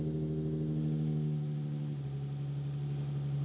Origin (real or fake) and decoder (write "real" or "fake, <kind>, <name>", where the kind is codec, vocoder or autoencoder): real